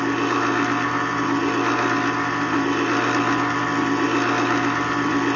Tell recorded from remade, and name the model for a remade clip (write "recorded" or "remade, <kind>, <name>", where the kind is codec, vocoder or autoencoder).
recorded